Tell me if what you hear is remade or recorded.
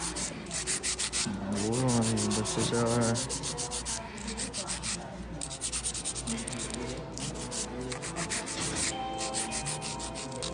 recorded